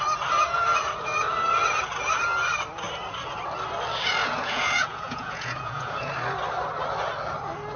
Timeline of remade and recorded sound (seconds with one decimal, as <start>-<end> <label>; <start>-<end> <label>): 0.0-4.2 recorded; 4.2-6.1 remade; 6.1-7.8 recorded